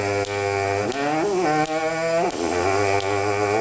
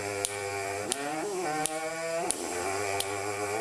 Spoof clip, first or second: second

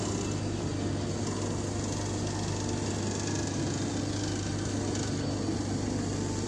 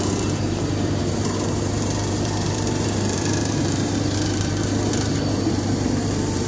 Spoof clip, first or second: second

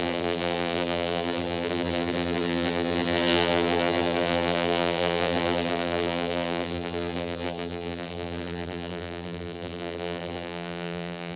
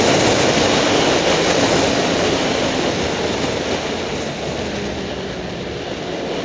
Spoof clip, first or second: first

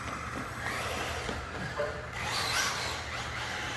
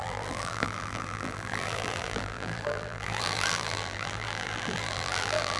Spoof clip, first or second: second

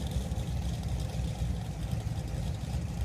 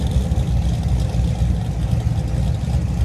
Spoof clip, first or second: first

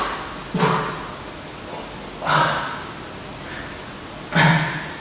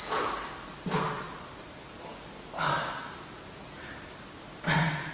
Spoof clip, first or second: second